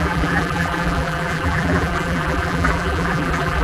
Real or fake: fake